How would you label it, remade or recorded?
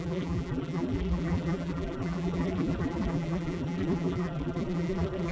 remade